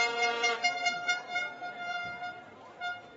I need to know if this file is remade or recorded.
recorded